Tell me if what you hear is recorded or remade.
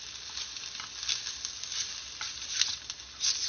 recorded